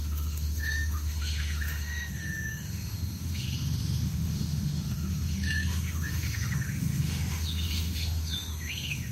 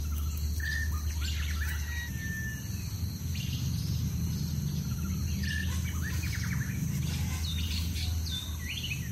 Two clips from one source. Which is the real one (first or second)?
second